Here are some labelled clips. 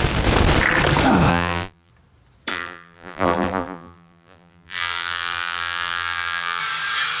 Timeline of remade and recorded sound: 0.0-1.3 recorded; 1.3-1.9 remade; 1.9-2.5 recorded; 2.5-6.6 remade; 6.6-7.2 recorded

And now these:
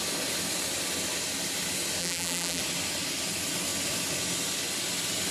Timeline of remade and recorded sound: 0.0-2.0 recorded; 2.0-2.6 remade; 2.6-5.3 recorded

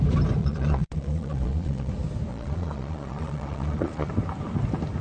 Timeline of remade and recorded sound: 0.0-0.4 recorded; 0.4-1.9 remade; 1.9-2.3 recorded; 2.3-4.1 remade; 4.1-5.0 recorded

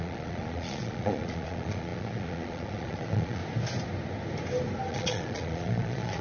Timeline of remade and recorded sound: 0.0-3.4 remade; 3.4-4.9 recorded; 4.9-6.2 remade

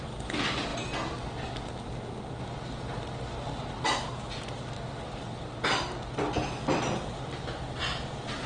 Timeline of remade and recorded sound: 0.0-8.5 recorded

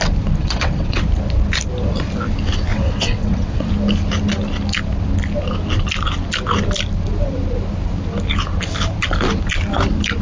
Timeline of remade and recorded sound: 0.0-0.4 recorded; 0.4-1.0 remade; 1.0-2.7 recorded; 2.7-3.7 remade; 3.7-10.2 recorded

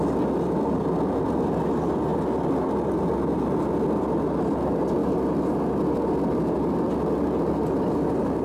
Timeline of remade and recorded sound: 0.0-8.4 recorded

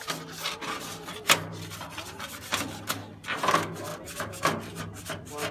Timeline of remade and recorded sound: 0.0-5.5 recorded